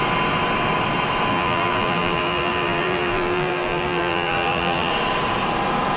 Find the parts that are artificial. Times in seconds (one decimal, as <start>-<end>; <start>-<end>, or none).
1.3-4.9